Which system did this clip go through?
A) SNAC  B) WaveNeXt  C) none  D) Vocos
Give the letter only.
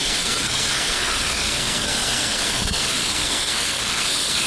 A